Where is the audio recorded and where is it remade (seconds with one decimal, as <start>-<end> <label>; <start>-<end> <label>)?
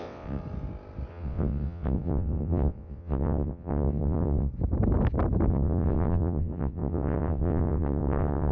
0.0-0.4 remade; 0.4-1.1 recorded; 1.1-4.5 remade; 4.5-5.5 recorded; 5.5-8.5 remade